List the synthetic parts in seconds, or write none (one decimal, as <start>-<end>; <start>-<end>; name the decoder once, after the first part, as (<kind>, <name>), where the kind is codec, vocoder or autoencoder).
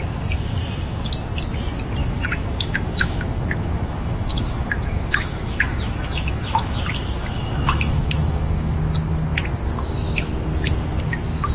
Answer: 2.0-6.8 (autoencoder, DAC-VAE); 7.2-8.8